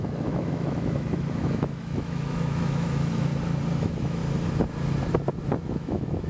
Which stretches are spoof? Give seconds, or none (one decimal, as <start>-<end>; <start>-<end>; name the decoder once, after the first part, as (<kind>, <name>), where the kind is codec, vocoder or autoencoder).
0.0-3.3 (autoencoder, DAC-VAE); 3.8-4.2; 5.7-6.3